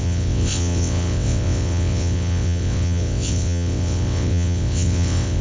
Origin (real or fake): fake